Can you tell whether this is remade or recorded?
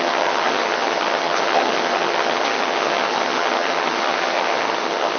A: remade